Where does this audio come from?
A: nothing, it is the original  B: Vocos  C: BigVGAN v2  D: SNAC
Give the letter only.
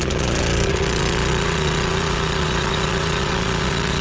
B